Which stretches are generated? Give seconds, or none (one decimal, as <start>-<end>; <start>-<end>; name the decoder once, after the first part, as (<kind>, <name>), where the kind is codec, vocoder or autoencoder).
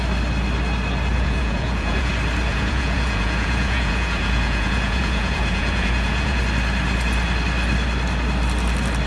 1.1-2.1 (vocoder, Vocos); 2.5-6.4